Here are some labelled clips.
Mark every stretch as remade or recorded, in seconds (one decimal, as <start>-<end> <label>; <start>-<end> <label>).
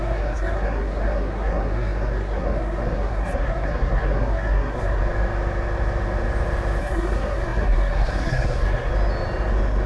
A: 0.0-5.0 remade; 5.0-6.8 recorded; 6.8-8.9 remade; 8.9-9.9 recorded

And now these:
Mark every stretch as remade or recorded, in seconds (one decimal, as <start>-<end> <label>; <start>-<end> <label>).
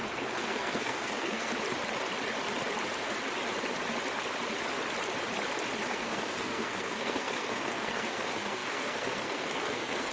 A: 0.0-1.5 remade; 1.5-5.9 recorded; 5.9-10.1 remade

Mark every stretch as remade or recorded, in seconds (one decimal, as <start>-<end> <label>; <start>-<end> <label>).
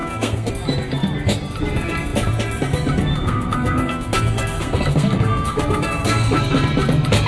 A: 0.0-0.5 remade; 0.5-3.1 recorded; 3.1-6.4 remade; 6.4-7.3 recorded